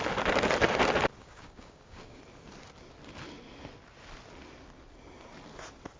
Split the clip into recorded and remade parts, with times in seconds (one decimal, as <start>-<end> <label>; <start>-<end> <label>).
0.0-1.2 recorded; 1.2-2.2 remade; 2.2-6.0 recorded